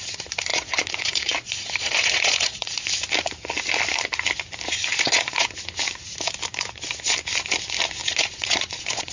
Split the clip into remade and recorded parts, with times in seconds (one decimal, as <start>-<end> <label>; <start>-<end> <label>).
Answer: 0.0-0.5 recorded; 0.5-2.9 remade; 2.9-4.9 recorded; 4.9-5.5 remade; 5.5-8.0 recorded; 8.0-9.1 remade